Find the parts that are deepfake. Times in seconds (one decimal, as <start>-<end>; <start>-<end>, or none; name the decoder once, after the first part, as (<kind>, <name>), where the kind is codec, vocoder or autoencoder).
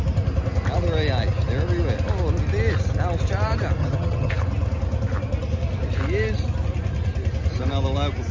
3.8-4.3 (vocoder, HiFi-GAN)